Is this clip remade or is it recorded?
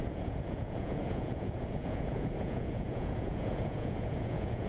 remade